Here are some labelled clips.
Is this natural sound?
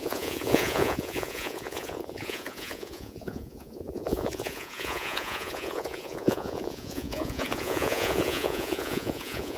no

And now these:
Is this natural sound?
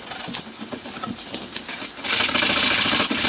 yes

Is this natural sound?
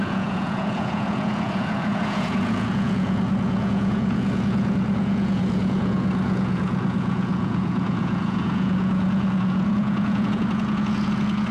no